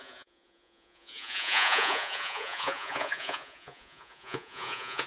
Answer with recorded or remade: remade